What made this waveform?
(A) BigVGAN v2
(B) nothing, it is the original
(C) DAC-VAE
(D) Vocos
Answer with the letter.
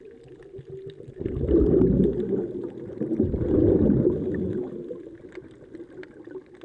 B